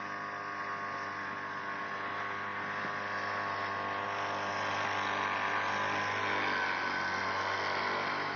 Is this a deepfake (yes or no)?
no